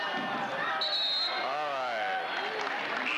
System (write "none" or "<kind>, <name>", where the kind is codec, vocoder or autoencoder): none